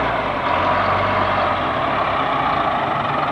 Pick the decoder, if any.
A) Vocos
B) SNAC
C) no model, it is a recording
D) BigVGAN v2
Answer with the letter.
C